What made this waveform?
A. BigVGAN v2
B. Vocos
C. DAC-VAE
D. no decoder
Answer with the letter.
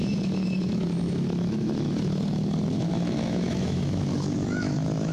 C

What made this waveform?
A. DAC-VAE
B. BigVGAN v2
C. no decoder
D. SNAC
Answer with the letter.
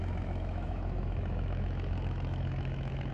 A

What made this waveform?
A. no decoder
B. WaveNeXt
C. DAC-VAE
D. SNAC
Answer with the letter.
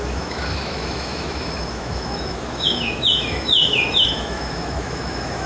C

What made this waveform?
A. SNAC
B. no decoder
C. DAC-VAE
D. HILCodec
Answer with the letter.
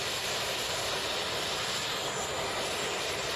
B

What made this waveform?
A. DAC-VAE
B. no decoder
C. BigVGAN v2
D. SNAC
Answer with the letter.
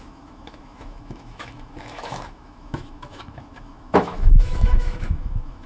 A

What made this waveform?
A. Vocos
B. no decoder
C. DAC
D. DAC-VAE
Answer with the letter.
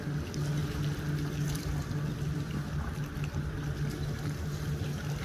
B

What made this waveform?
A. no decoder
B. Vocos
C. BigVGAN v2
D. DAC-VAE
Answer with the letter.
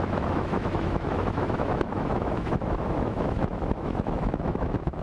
D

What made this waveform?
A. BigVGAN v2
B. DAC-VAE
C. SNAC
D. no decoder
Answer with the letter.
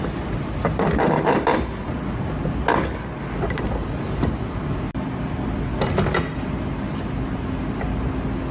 D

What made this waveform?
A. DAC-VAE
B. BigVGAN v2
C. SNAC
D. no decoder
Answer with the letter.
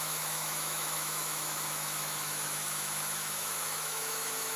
A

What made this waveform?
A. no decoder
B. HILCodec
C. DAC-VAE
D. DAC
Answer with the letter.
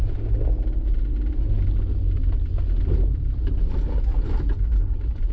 A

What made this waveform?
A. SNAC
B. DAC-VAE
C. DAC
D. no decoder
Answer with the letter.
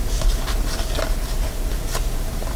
D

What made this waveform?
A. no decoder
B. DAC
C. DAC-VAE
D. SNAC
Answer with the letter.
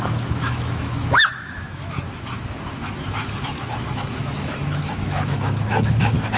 C